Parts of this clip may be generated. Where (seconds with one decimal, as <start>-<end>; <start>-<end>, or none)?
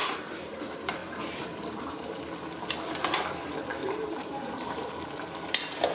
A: 0.0-0.6; 1.0-2.2; 3.8-5.1